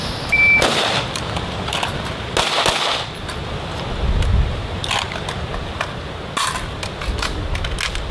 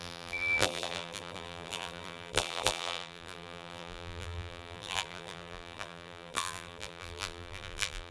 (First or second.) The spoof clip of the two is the second